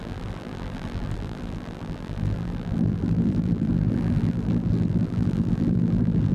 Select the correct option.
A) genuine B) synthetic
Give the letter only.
B